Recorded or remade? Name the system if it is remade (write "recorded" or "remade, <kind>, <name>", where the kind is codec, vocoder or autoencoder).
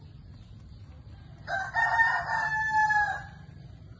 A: recorded